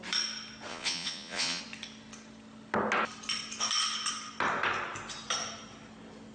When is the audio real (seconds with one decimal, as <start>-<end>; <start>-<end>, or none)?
0.0-0.7; 1.6-6.3